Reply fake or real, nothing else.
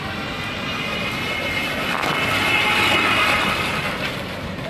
real